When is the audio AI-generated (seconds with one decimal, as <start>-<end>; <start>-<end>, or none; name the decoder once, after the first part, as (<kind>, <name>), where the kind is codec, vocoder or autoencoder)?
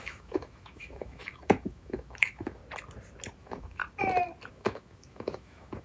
0.0-2.6 (autoencoder, DAC-VAE); 3.4-3.8; 4.5-5.8